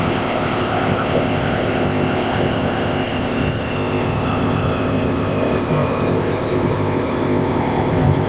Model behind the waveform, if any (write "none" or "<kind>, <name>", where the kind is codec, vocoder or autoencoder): codec, ZipCodec